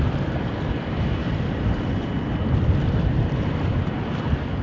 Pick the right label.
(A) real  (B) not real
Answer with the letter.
A